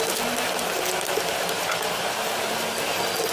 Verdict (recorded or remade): recorded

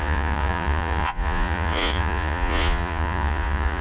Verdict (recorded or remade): remade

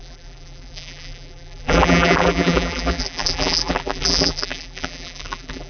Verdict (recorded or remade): remade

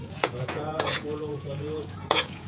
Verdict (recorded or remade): remade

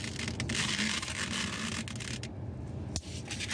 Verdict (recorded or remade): recorded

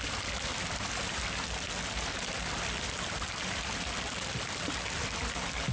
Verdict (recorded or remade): recorded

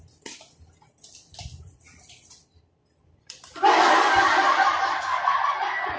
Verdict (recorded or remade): remade